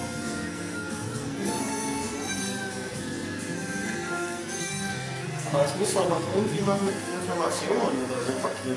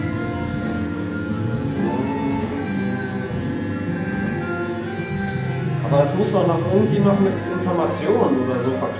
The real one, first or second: second